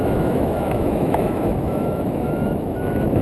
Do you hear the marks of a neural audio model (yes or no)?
yes